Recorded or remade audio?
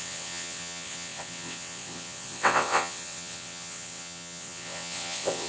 remade